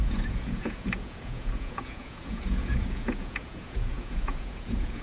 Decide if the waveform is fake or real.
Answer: fake